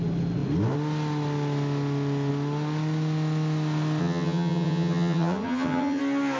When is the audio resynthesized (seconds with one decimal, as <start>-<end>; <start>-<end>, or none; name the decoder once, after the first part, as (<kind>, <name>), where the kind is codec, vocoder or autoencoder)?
4.0-6.0 (vocoder, HiFi-GAN)